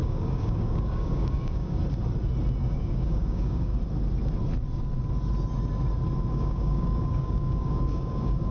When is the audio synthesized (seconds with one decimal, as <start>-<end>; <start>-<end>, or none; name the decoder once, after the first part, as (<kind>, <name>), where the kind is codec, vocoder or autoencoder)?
0.0-1.8 (codec, DAC); 2.6-3.7; 6.3-8.5